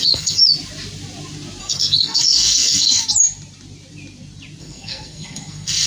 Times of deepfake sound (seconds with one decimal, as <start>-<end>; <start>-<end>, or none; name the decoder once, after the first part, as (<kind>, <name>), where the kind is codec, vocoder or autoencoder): 0.0-0.4 (codec, SNAC); 1.6-3.0; 4.6-5.9